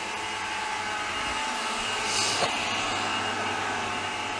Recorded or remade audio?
recorded